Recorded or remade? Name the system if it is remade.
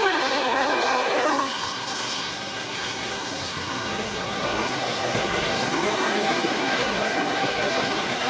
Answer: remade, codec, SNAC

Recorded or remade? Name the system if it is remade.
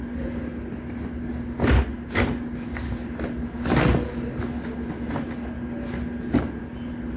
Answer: recorded